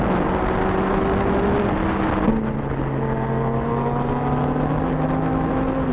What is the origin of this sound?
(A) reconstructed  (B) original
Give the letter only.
B